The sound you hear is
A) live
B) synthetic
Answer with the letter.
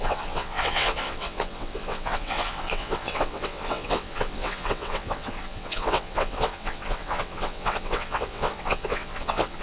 B